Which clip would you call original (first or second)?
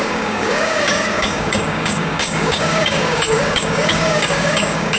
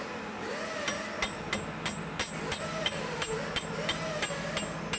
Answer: second